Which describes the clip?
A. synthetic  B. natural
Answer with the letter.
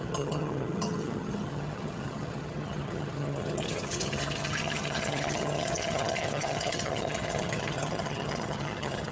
A